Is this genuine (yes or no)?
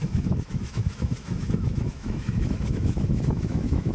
no